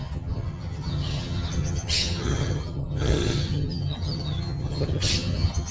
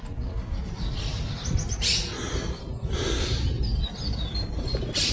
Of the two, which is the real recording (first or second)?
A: second